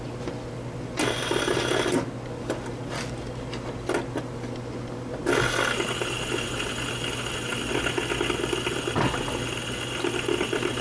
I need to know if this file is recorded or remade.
recorded